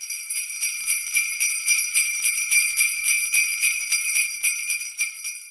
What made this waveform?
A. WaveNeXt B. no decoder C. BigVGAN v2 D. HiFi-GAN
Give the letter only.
C